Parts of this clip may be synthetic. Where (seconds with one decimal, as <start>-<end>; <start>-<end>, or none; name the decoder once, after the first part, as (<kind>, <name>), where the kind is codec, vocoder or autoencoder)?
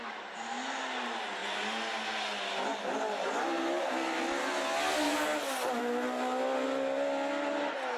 none